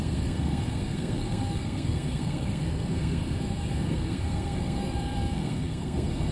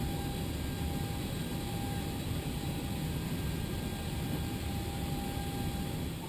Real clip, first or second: second